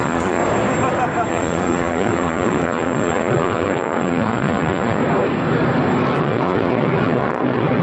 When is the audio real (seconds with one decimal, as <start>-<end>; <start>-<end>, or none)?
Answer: 0.4-1.3; 5.0-6.2